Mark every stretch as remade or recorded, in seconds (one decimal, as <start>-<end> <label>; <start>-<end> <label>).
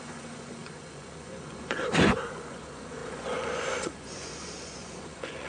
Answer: 0.0-5.5 remade